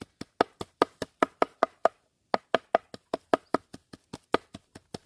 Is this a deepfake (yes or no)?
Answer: no